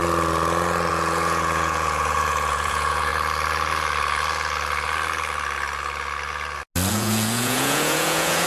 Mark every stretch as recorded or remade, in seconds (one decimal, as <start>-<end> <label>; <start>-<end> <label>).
0.0-0.9 recorded; 0.9-3.1 remade; 3.1-6.9 recorded; 6.9-8.5 remade